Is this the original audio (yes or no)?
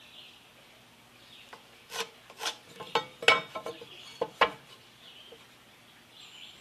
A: yes